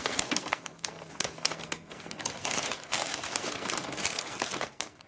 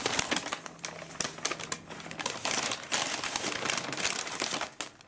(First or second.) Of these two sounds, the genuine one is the second